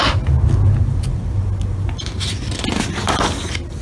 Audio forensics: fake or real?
real